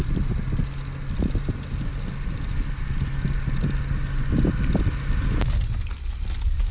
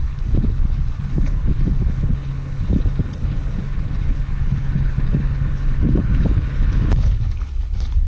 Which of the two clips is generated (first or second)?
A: second